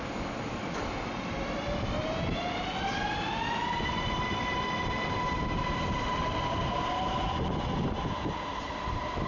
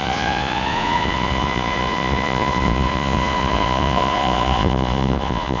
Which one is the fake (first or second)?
second